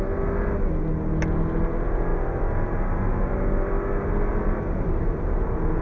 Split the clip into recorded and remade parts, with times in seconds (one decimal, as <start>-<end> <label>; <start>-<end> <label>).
0.0-5.8 recorded